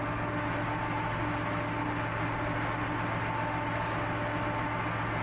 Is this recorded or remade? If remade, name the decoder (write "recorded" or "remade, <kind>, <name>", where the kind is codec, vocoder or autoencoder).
recorded